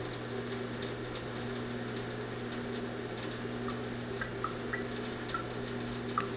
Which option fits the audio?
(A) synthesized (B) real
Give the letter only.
B